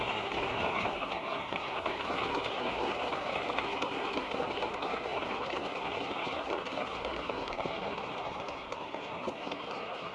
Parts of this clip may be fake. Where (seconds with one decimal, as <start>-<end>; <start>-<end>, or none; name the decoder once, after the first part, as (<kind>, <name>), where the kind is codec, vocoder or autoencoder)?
0.0-10.1 (codec, SNAC)